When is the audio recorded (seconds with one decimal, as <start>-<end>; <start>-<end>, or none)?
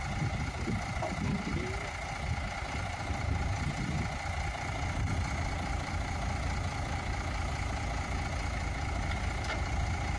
0.0-10.2